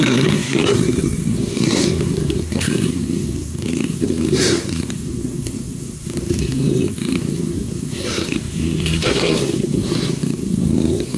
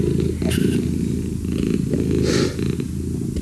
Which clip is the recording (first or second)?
second